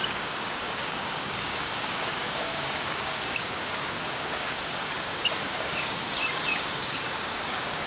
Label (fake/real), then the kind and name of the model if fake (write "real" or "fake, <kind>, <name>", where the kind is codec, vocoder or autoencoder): fake, codec, DAC